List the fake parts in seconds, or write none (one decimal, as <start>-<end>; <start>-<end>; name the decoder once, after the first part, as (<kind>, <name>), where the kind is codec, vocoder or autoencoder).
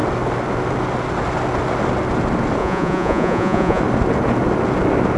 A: 2.6-3.8 (vocoder, Vocos)